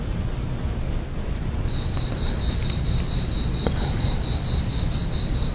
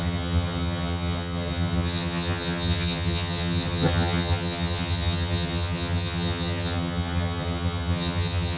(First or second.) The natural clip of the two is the first